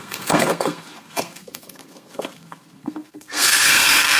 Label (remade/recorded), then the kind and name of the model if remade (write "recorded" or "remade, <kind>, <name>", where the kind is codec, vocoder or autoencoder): remade, codec, SNAC